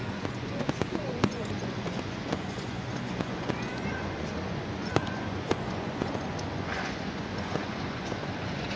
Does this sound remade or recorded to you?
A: remade